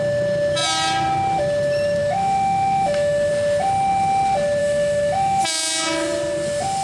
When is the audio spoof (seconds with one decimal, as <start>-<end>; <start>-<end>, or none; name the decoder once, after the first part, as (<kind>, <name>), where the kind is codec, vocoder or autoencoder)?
2.0-3.3 (autoencoder, DAC-VAE); 4.6-5.4